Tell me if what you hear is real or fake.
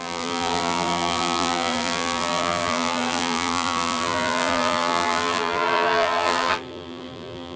fake